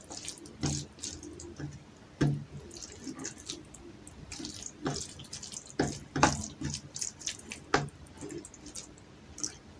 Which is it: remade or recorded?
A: recorded